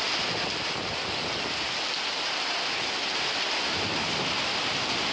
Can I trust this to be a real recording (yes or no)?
yes